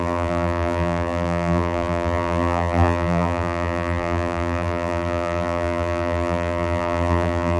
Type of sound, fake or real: fake